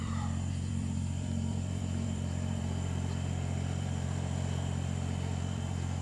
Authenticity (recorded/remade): remade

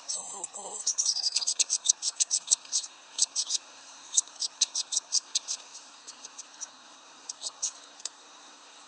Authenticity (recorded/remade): remade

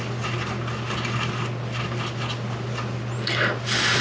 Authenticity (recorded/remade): recorded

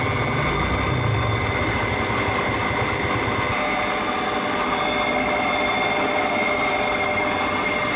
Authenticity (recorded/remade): recorded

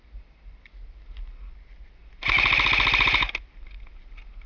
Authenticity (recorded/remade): recorded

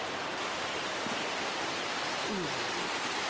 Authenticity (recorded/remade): recorded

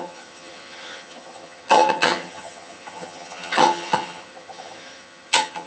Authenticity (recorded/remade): remade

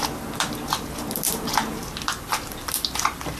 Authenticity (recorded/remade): recorded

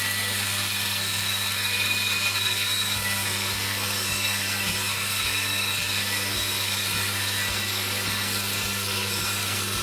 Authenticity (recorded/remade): remade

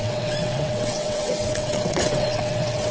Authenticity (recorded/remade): remade